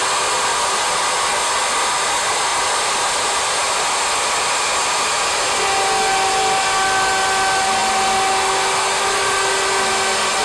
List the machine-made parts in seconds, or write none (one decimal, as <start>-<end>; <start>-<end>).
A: none